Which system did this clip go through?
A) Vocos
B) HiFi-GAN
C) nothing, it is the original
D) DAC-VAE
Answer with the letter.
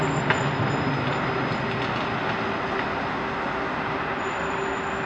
C